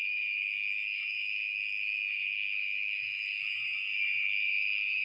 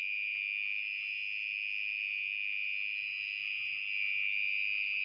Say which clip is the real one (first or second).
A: second